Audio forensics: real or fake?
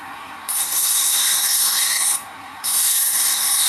fake